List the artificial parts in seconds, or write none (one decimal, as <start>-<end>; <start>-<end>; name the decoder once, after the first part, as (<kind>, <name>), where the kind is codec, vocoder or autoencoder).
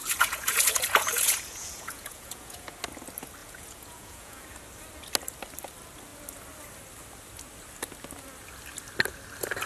0.0-2.7 (vocoder, Vocos); 3.4-4.4